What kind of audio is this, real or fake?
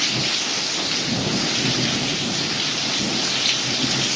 real